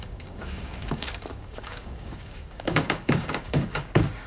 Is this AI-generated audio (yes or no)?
yes